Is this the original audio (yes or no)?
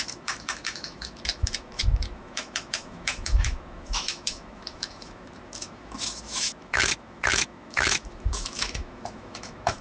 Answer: no